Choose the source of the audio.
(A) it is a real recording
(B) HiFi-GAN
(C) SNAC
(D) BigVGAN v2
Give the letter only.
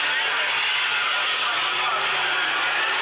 A